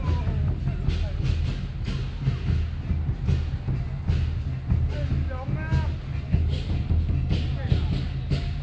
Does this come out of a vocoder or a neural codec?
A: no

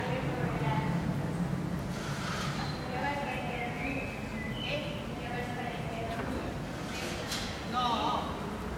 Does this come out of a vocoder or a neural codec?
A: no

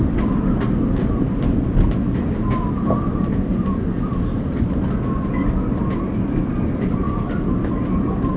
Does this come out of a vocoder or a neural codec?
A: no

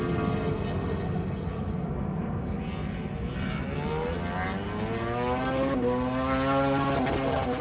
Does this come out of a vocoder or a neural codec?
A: no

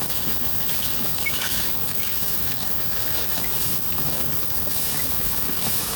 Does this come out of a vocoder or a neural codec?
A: yes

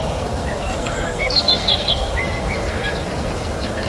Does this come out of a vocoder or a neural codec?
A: yes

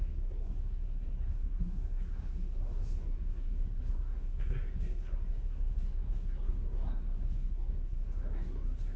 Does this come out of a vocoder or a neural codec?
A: yes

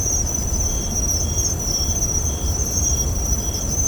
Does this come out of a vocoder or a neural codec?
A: yes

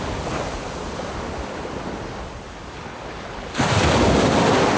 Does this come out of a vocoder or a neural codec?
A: no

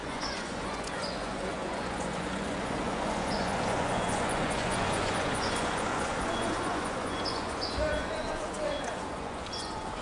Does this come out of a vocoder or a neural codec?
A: yes